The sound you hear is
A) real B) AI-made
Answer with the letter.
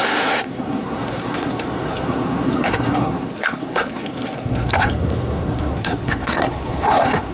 B